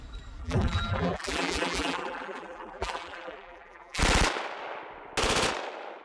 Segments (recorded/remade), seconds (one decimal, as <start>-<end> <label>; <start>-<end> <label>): 0.0-0.4 recorded; 0.4-4.0 remade; 4.0-6.0 recorded